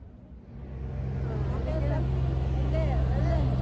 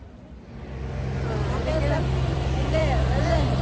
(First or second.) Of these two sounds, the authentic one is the first